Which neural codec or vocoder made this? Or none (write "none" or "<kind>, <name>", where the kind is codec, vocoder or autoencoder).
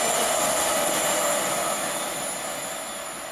none